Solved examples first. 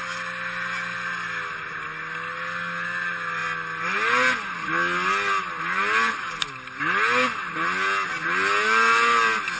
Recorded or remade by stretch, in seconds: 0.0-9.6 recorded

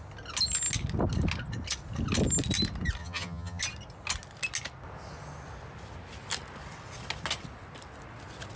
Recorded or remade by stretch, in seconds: 0.0-3.0 recorded; 3.0-3.6 remade; 3.6-8.6 recorded

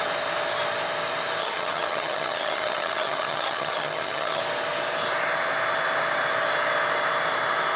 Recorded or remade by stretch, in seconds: 0.0-1.4 recorded; 1.4-4.4 remade; 4.4-7.8 recorded

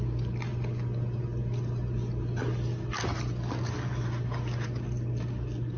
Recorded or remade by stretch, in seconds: 0.0-5.8 recorded